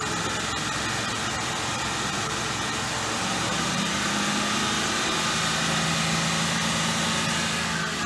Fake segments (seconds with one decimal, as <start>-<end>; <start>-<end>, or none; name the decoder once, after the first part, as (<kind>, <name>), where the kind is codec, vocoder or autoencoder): none